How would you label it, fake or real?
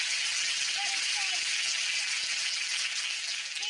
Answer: real